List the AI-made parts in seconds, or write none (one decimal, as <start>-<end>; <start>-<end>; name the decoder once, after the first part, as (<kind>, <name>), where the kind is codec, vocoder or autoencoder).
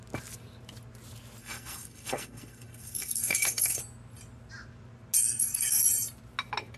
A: 1.4-3.8 (codec, SNAC); 5.2-5.8